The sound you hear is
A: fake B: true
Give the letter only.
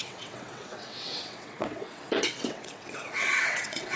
A